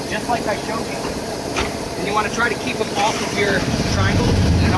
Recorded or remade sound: remade